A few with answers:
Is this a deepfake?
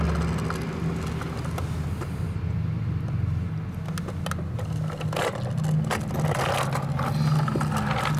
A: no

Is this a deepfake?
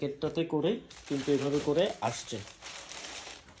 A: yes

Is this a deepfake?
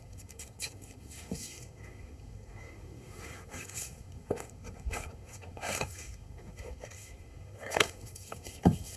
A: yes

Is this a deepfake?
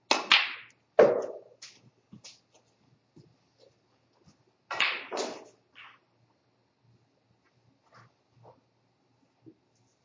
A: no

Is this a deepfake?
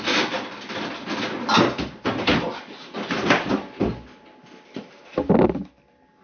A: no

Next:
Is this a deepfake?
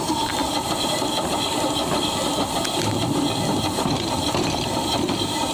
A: no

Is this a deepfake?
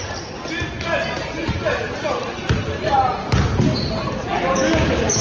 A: no